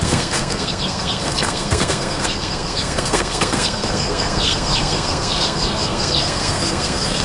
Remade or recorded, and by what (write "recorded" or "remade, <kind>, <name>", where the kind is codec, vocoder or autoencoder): remade, codec, SNAC